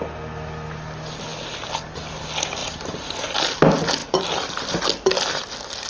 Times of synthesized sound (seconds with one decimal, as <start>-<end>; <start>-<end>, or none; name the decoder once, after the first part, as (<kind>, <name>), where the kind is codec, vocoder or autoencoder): 2.6-3.2 (vocoder, BigVGAN v2); 4.0-4.8